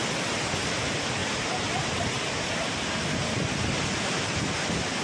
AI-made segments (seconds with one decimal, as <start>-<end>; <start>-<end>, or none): none